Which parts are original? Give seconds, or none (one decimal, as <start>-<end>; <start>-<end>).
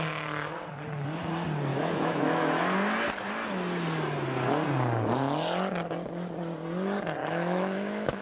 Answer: 0.0-1.7; 2.6-7.2